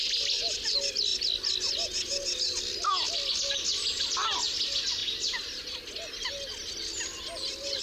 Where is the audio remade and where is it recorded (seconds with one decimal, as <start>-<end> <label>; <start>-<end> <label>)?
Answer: 0.0-7.8 recorded